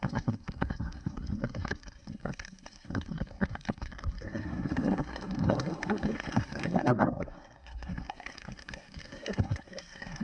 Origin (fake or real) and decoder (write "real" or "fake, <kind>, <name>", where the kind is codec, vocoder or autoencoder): fake, codec, SNAC